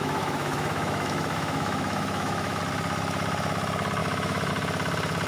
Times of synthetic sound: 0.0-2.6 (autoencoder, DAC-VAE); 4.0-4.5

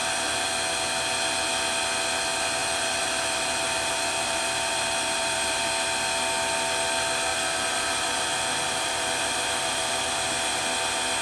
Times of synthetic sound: 0.0-0.5 (vocoder, BigVGAN v2); 2.6-5.7; 7.3-10.6

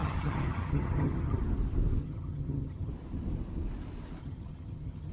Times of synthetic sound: 0.0-1.4 (vocoder, HiFi-GAN); 2.0-2.9; 4.2-5.1